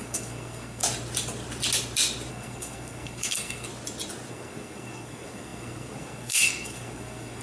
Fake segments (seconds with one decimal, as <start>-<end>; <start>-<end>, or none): 0.0-0.8; 2.3-3.7; 4.3-7.4